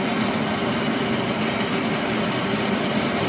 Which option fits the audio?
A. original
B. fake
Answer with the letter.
A